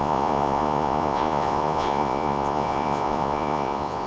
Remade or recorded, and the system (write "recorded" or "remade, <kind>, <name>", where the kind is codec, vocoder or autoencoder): remade, vocoder, Vocos